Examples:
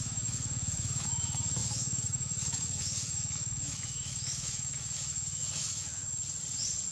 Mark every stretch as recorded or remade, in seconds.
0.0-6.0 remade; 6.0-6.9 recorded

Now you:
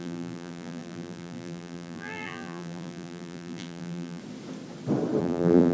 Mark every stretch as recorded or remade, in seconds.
0.0-4.2 remade; 4.2-5.2 recorded; 5.2-5.7 remade

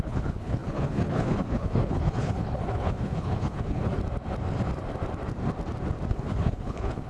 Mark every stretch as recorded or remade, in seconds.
0.0-4.0 remade; 4.0-6.1 recorded; 6.1-7.1 remade

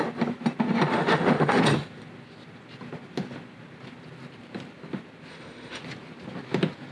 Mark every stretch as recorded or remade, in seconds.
0.0-0.9 recorded; 0.9-1.6 remade; 1.6-5.3 recorded; 5.3-5.8 remade; 5.8-6.9 recorded

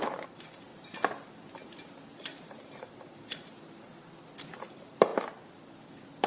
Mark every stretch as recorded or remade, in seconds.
0.0-3.9 remade; 3.9-4.5 recorded; 4.5-6.3 remade